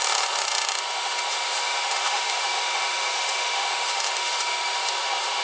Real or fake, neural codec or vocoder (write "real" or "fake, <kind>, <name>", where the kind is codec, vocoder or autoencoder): fake, autoencoder, DAC-VAE